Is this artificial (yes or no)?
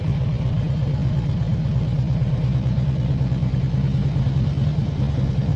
yes